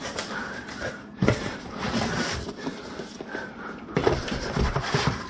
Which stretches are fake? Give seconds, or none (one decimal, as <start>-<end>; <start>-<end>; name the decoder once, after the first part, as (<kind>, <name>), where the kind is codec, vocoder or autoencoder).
0.4-2.5 (vocoder, BigVGAN v2); 4.0-5.3